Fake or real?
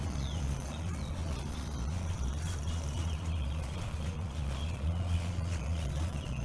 fake